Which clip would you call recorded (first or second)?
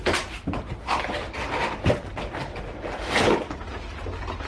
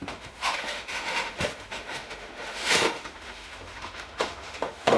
first